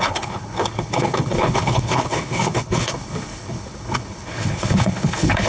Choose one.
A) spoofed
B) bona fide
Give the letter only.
A